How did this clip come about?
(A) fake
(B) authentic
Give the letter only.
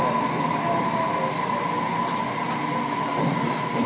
B